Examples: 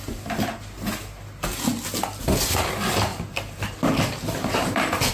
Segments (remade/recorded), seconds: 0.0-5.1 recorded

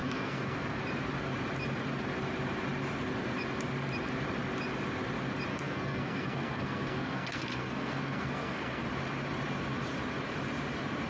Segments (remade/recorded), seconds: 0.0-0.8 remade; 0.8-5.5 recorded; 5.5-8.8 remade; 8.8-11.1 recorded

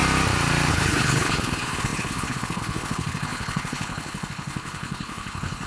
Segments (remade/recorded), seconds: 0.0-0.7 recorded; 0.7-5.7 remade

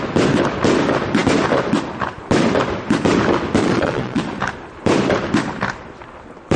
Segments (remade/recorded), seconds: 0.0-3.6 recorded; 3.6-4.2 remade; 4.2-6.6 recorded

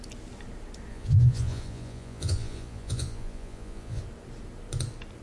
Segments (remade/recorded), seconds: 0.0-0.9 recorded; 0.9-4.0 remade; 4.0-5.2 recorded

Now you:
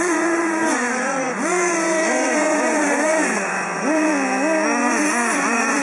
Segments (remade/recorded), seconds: 0.0-4.1 remade; 4.1-4.8 recorded; 4.8-5.8 remade